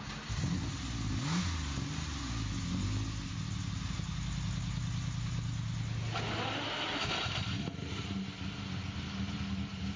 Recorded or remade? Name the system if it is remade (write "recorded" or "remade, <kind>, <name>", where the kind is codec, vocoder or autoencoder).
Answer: recorded